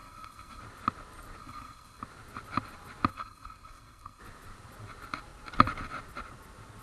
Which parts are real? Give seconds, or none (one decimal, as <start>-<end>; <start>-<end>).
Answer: 0.6-1.4; 2.0-3.1; 4.2-6.8